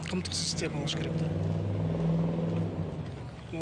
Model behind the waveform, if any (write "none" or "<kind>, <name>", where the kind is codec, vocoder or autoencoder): none